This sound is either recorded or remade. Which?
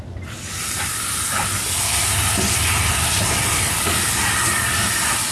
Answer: recorded